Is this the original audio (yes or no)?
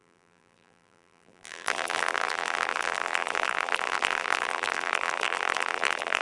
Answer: no